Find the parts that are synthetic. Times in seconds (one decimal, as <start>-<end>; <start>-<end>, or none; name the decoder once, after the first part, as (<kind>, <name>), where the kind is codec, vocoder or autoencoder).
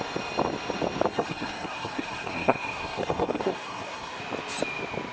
1.1-4.2 (codec, SNAC)